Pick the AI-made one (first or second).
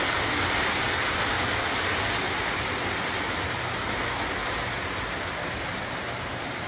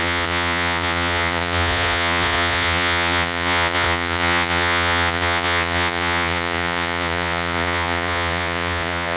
second